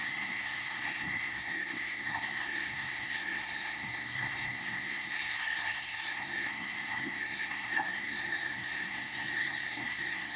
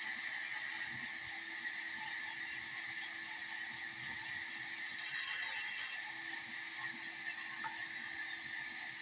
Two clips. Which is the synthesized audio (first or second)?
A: first